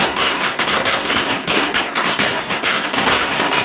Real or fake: fake